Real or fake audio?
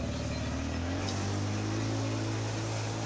real